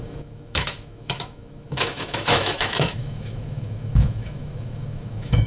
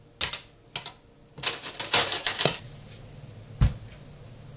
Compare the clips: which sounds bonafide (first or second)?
second